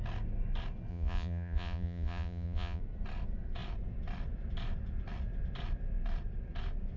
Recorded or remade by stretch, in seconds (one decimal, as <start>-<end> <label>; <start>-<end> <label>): 0.0-0.9 recorded; 0.9-2.8 remade; 2.8-7.0 recorded